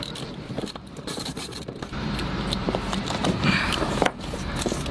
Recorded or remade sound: remade